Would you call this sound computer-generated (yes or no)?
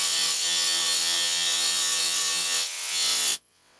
yes